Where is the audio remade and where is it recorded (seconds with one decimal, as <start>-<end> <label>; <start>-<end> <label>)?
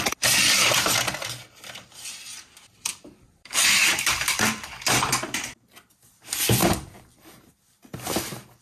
0.0-2.9 recorded; 2.9-5.1 remade; 5.1-6.6 recorded; 6.6-7.3 remade; 7.3-8.6 recorded